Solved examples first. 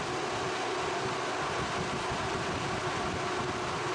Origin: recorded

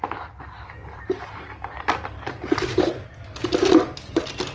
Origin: recorded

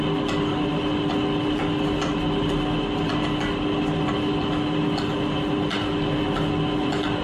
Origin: recorded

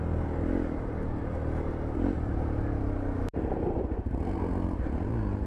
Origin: recorded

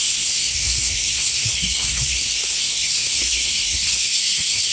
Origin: remade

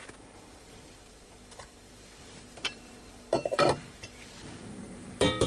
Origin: remade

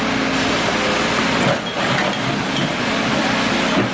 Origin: recorded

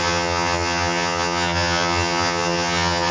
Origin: remade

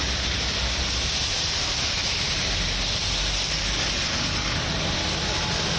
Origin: recorded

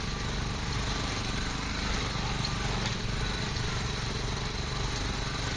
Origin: recorded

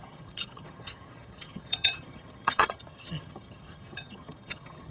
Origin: remade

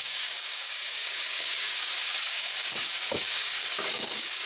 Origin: remade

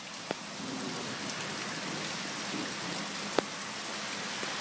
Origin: recorded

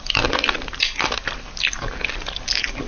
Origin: recorded